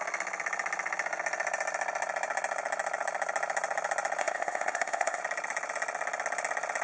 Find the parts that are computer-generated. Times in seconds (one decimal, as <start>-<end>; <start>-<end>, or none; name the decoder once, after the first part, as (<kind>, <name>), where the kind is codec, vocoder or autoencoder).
4.2-5.2 (codec, ZipCodec)